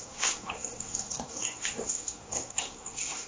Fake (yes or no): yes